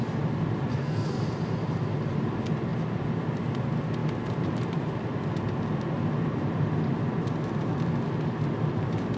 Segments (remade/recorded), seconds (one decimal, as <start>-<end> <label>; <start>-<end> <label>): 0.0-0.7 recorded; 0.7-1.2 remade; 1.2-9.2 recorded